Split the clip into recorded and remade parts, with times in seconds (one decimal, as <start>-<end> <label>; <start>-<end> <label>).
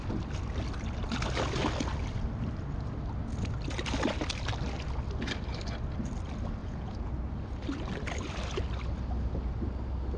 0.0-6.6 recorded; 6.6-7.1 remade; 7.1-10.2 recorded